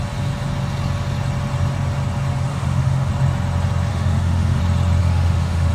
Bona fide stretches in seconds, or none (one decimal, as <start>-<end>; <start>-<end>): 0.0-2.5; 3.1-3.9; 4.6-5.0

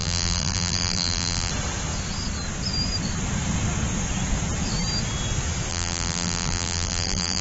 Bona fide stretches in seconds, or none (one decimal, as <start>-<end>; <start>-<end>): 1.5-5.7

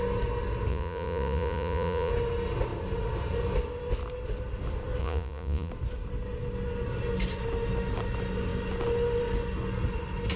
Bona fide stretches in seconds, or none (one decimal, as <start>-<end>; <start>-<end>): 0.0-0.7; 2.1-5.0; 5.7-10.4